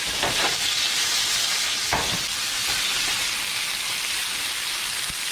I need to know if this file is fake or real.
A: real